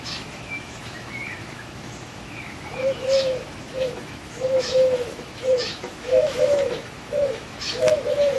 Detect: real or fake fake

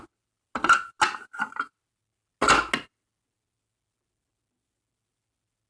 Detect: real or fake real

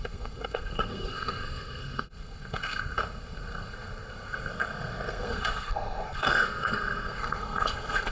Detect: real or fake fake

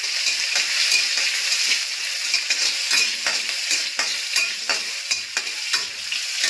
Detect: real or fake fake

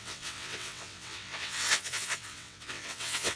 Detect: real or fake fake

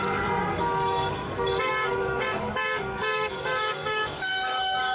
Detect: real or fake fake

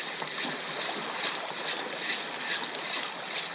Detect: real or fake real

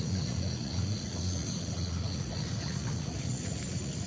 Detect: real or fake fake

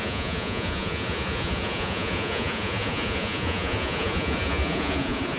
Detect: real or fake fake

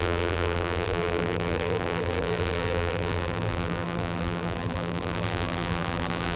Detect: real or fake fake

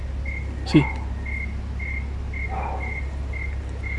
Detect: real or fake real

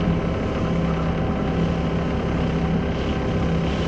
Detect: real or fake real